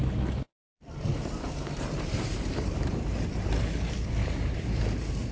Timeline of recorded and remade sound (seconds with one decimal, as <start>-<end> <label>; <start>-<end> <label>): 0.0-1.1 recorded; 1.1-3.6 remade; 3.6-4.2 recorded; 4.2-4.8 remade; 4.8-5.3 recorded